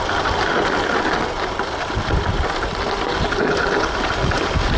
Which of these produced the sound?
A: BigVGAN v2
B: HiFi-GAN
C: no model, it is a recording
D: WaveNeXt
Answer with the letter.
C